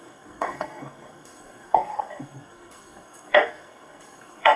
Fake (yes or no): yes